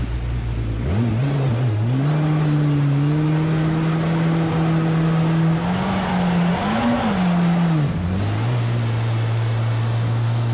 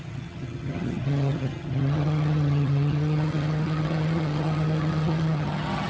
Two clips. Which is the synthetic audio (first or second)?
second